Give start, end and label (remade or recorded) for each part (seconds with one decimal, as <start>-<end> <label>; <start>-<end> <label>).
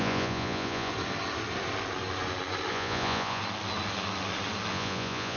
0.0-0.9 remade; 0.9-2.7 recorded; 2.7-3.4 remade; 3.4-4.7 recorded; 4.7-5.4 remade